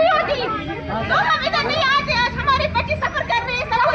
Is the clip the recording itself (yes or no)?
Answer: yes